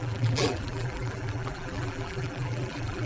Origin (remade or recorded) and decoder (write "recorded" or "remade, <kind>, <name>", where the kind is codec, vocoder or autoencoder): remade, vocoder, BigVGAN v2